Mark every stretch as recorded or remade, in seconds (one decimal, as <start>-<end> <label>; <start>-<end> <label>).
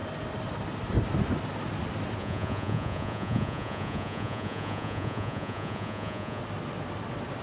0.0-2.2 recorded; 2.2-6.4 remade; 6.4-7.4 recorded